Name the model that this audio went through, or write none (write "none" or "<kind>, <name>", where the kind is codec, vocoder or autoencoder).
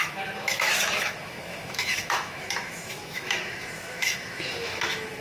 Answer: autoencoder, DAC-VAE